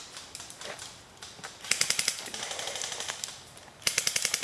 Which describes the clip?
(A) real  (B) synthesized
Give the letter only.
A